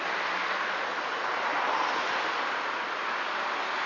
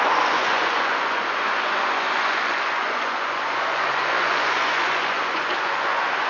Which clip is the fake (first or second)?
second